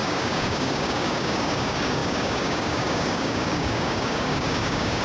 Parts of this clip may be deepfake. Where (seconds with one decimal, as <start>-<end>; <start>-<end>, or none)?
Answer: 0.0-5.0